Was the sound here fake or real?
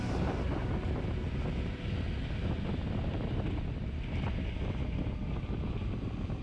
real